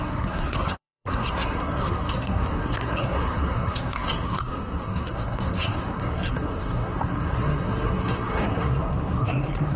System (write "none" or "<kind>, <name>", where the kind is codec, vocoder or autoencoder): codec, SNAC